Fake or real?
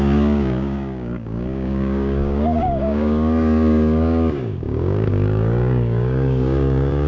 fake